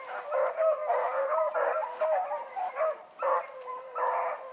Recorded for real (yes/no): yes